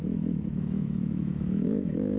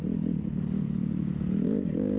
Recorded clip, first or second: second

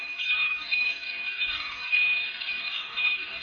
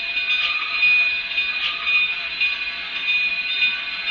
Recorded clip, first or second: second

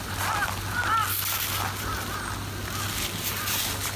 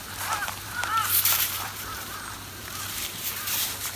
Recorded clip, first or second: first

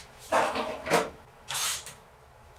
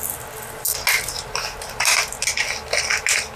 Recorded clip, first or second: second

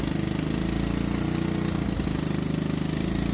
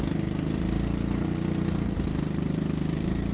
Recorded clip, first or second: first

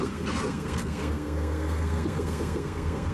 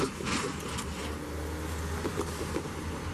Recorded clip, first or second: second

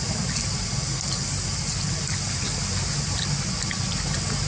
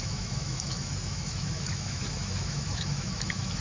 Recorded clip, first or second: first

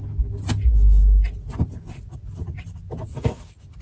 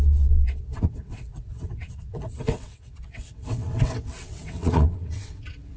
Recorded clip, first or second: first